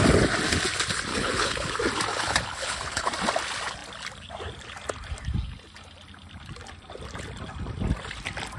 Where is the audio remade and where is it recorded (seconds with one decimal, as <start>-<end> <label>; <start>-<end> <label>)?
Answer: 0.0-1.1 recorded; 1.1-1.7 remade; 1.7-2.1 recorded; 2.1-3.1 remade; 3.1-8.6 recorded